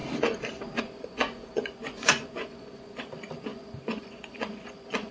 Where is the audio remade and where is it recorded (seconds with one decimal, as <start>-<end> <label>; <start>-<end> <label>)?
0.0-0.8 recorded; 0.8-5.1 remade